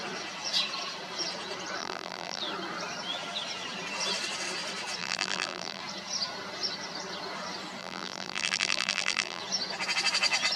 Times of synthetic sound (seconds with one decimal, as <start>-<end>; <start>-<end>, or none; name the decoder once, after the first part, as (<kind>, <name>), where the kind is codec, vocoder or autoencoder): 1.8-2.4 (vocoder, BigVGAN v2); 5.0-5.8; 7.8-9.4